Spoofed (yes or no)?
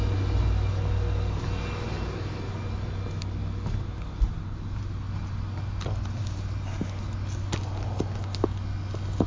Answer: no